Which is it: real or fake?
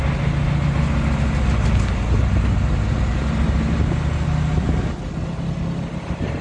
real